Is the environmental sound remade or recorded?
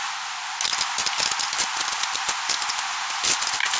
recorded